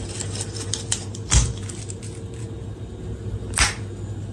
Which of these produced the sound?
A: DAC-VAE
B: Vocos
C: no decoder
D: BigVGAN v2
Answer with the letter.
C